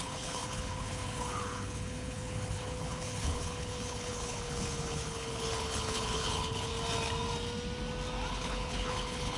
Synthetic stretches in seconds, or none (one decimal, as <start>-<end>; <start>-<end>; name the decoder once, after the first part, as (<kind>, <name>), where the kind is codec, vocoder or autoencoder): 0.0-6.7 (codec, HILCodec); 8.3-9.4